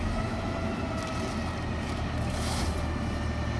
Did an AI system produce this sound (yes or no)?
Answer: no